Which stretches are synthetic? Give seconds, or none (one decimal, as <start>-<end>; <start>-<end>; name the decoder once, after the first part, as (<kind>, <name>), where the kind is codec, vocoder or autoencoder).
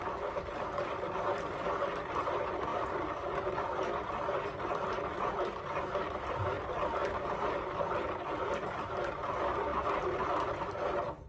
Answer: none